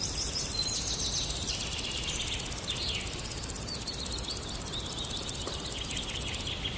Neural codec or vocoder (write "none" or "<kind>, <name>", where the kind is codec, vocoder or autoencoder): none